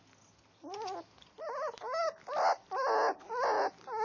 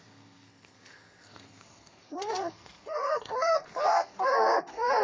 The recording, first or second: first